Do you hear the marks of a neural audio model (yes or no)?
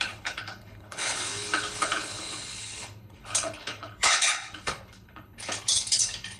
yes